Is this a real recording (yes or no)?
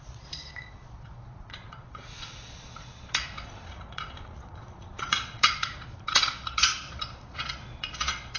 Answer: no